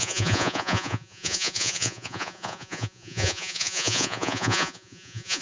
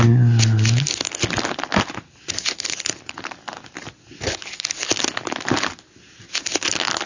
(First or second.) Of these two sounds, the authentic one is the second